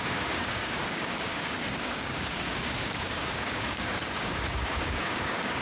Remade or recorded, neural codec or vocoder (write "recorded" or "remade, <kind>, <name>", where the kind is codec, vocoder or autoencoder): remade, codec, DAC